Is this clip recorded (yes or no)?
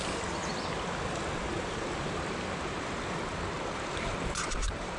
no